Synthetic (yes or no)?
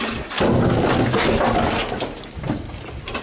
no